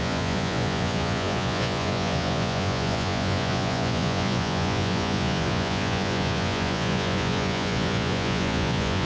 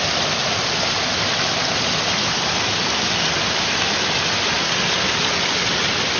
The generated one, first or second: first